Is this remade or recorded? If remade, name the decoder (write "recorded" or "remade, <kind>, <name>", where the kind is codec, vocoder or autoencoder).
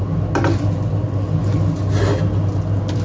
recorded